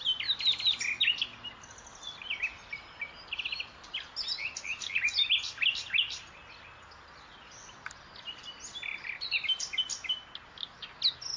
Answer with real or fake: real